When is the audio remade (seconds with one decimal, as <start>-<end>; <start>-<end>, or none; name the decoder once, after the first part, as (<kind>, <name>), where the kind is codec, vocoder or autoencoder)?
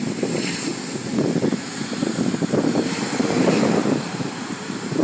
0.7-1.2 (vocoder, BigVGAN v2); 2.0-5.0